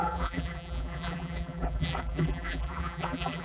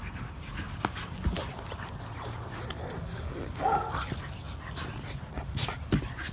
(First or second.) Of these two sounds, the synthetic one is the first